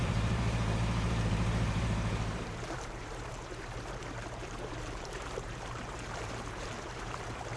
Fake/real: fake